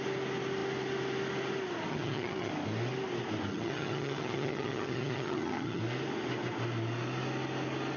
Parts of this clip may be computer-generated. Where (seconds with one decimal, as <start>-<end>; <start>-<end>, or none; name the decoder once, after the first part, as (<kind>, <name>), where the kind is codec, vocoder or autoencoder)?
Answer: 1.9-2.5 (vocoder, HiFi-GAN); 3.5-5.8